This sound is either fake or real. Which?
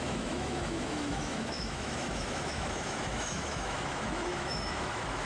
fake